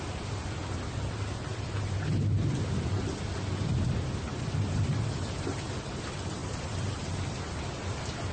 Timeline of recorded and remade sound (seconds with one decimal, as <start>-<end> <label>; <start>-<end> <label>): 0.0-8.3 recorded